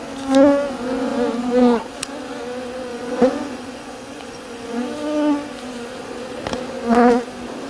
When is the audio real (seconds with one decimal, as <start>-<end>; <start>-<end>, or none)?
0.0-2.9; 4.8-7.7